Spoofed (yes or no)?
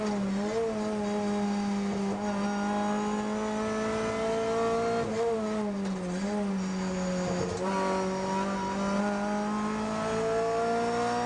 no